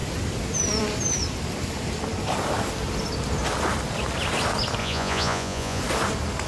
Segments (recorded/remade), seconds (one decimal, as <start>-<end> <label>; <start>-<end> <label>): 0.0-4.8 recorded; 4.8-5.8 remade; 5.8-6.5 recorded